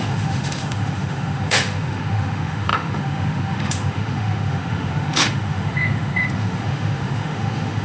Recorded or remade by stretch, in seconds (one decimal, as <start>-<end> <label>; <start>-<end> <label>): 0.0-7.8 remade